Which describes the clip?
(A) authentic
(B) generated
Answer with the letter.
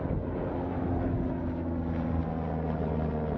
A